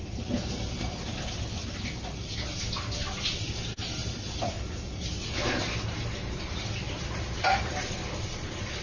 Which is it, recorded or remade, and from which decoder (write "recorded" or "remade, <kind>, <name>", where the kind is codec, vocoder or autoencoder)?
recorded